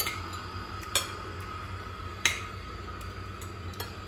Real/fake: real